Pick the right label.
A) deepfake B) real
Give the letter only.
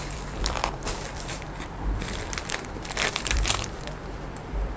A